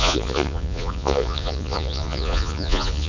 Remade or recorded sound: remade